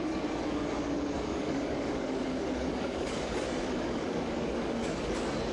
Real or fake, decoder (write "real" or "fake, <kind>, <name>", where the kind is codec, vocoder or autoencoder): fake, codec, DAC